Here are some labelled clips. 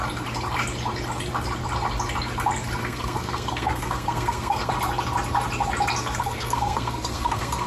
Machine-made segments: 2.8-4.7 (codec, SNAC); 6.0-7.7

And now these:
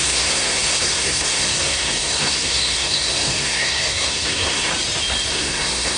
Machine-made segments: 0.0-4.7 (codec, SNAC); 5.3-6.0